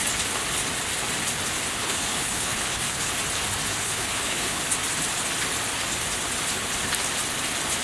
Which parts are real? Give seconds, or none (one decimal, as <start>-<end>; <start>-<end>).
0.0-1.8; 3.1-3.8; 4.6-7.8